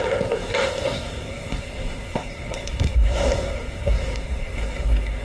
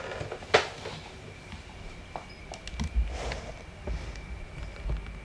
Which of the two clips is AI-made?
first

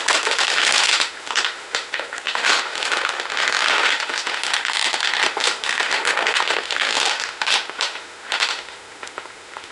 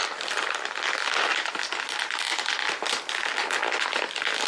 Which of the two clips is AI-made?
first